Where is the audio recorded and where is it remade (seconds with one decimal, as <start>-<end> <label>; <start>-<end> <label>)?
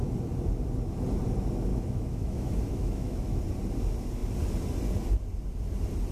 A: 0.0-1.7 recorded; 1.7-3.4 remade; 3.4-6.1 recorded